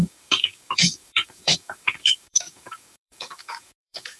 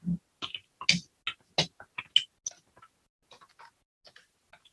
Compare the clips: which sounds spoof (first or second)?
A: first